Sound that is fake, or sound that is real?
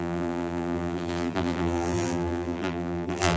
fake